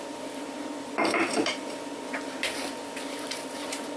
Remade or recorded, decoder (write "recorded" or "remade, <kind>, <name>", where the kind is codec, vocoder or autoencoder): remade, vocoder, BigVGAN v2